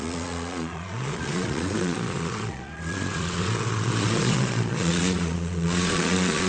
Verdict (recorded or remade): remade